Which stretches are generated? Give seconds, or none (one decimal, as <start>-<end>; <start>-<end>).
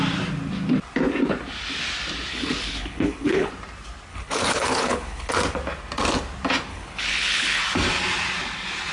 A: 2.3-3.5; 4.1-5.3; 6.7-7.6